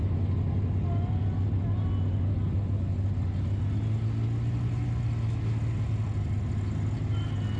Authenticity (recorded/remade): recorded